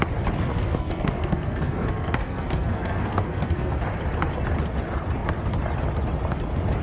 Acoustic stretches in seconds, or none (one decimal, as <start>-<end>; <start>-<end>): 0.0-0.5; 3.8-6.8